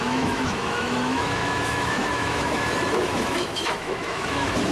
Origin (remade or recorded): remade